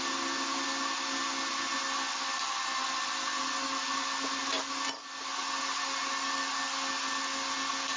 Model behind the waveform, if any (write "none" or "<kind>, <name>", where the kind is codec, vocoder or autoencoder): none